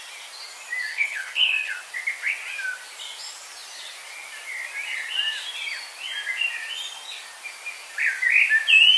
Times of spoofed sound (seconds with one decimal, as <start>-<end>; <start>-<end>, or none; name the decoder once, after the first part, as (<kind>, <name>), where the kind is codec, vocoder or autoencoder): 0.9-1.7 (codec, HILCodec)

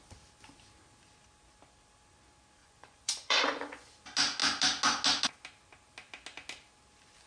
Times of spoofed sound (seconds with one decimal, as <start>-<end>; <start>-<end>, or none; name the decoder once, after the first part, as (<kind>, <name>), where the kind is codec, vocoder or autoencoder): 2.6-3.9 (vocoder, Vocos)

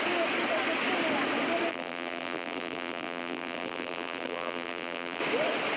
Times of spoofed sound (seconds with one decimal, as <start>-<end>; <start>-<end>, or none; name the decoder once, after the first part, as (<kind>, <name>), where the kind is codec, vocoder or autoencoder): 1.7-5.2 (vocoder, BigVGAN v2)

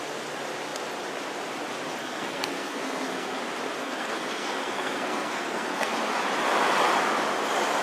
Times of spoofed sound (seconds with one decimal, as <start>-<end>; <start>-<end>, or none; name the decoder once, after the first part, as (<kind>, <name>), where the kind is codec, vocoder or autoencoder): 2.0-3.4 (codec, SNAC); 3.8-5.9

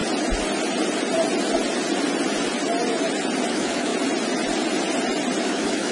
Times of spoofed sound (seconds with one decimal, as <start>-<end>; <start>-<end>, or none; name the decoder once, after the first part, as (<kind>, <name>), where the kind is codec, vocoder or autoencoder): 3.5-3.9 (autoencoder, DAC-VAE); 5.4-5.9

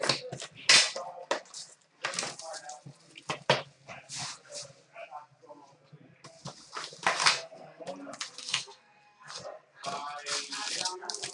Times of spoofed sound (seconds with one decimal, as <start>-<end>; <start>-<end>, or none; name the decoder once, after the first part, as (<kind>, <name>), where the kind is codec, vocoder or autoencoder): 7.2-7.8 (codec, SNAC); 8.4-9.4